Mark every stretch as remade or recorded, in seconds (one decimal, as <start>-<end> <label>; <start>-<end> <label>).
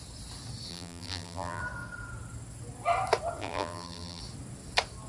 0.0-0.7 recorded; 0.7-1.6 remade; 1.6-3.4 recorded; 3.4-4.2 remade; 4.2-5.1 recorded